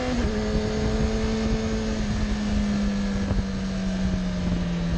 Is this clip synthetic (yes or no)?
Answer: no